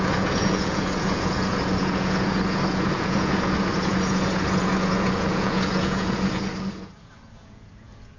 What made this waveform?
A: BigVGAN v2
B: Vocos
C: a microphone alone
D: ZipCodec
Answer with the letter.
B